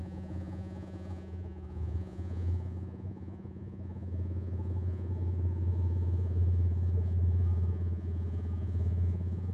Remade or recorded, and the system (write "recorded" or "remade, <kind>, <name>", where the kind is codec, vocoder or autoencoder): remade, vocoder, Vocos